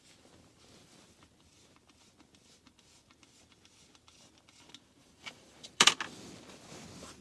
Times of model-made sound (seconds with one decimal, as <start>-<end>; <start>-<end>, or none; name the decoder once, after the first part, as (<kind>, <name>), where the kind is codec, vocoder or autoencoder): 5.0-5.9 (vocoder, BigVGAN v2)